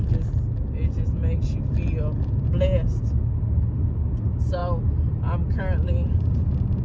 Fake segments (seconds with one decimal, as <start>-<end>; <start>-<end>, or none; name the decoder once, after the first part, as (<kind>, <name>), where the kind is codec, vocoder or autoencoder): none